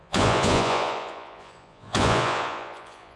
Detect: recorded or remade remade